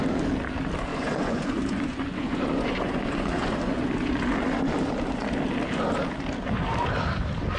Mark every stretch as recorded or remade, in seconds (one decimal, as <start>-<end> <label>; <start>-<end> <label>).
0.0-0.9 recorded; 0.9-3.9 remade; 3.9-7.6 recorded